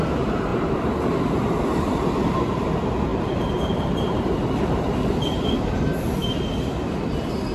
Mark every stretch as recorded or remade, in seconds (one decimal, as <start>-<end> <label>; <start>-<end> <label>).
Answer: 0.0-3.1 recorded; 3.1-5.1 remade; 5.1-7.5 recorded